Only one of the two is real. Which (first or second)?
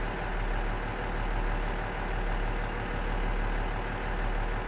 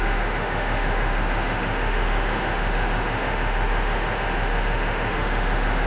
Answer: first